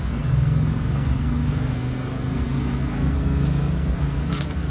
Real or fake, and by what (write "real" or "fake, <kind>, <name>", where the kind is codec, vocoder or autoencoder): fake, codec, SNAC